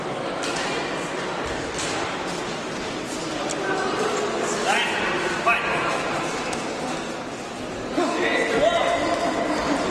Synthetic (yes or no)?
no